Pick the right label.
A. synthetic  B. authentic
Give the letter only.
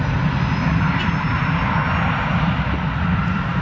B